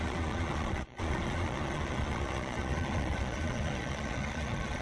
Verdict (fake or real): fake